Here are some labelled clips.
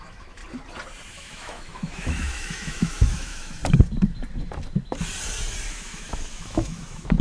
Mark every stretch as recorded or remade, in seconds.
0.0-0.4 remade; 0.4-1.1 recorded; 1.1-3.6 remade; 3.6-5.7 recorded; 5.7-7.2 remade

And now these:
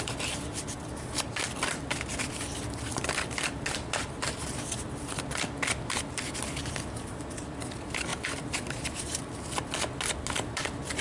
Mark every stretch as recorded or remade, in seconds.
0.0-8.1 recorded; 8.1-9.2 remade; 9.2-11.0 recorded

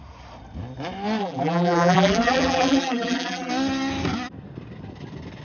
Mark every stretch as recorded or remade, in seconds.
0.0-1.2 recorded; 1.2-3.5 remade; 3.5-5.4 recorded

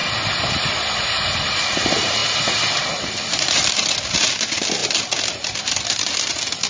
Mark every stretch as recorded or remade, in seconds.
0.0-6.7 recorded

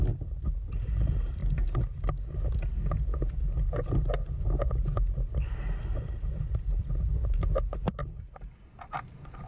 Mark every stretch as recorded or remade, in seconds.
0.0-9.5 recorded

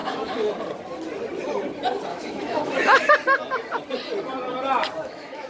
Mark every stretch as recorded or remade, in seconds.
0.0-0.5 remade; 0.5-2.1 recorded; 2.1-3.1 remade; 3.1-5.0 recorded; 5.0-5.5 remade

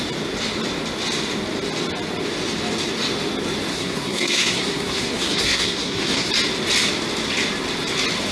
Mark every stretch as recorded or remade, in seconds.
0.0-3.7 recorded; 3.7-6.3 remade; 6.3-8.3 recorded